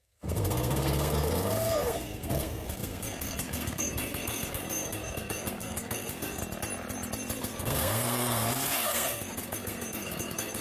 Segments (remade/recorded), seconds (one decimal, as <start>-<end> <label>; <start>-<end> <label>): 0.0-6.4 remade; 6.4-7.4 recorded; 7.4-10.6 remade